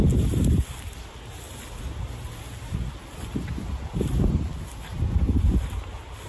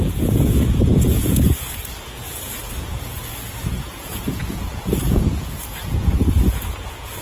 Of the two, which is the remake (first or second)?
second